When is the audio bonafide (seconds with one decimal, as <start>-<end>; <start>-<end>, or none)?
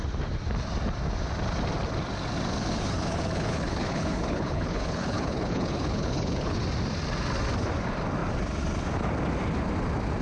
0.0-2.6; 6.6-10.2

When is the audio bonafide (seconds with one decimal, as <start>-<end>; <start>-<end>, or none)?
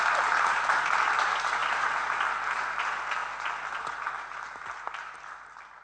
0.0-5.8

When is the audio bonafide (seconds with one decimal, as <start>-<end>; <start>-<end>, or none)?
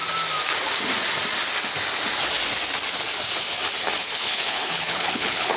0.0-4.0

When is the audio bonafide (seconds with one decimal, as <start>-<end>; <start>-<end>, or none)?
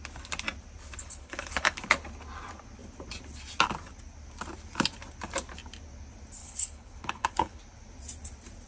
0.0-1.0; 1.8-6.4; 7.6-8.7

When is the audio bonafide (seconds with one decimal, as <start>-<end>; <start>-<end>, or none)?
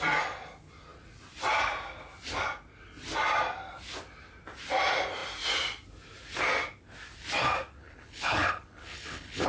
0.0-7.8